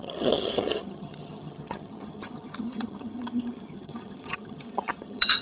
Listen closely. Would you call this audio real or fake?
fake